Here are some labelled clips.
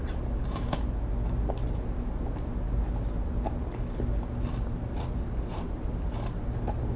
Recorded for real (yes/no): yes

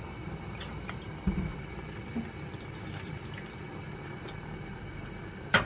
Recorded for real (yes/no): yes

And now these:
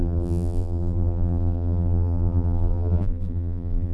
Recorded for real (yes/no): no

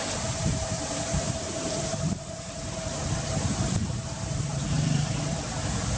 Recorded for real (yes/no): no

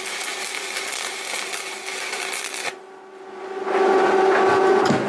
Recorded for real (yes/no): yes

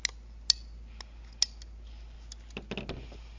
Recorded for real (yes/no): yes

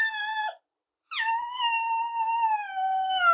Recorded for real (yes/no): yes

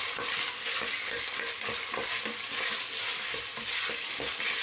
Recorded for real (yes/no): no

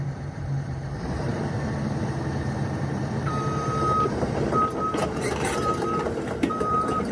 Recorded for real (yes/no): no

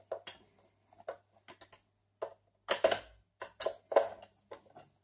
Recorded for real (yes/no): yes